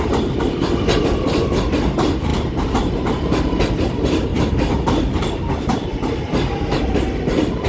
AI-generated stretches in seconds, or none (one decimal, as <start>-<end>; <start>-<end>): 2.3-3.4; 4.3-5.9